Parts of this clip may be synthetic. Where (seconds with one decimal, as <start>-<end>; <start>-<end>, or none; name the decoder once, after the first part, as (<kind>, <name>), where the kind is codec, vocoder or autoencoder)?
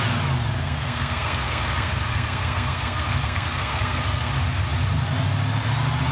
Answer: 0.6-4.3 (codec, SNAC)